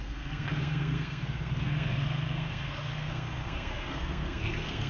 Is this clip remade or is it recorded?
remade